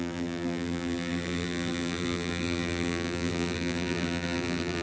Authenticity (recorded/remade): remade